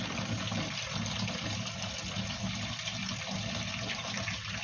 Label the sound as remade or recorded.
recorded